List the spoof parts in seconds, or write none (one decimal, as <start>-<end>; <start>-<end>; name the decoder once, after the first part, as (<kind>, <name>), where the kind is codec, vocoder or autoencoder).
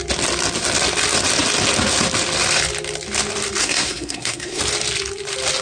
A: 3.6-4.6 (codec, SNAC)